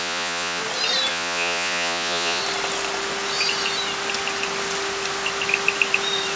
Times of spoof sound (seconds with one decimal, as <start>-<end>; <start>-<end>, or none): 0.0-0.6; 1.1-2.4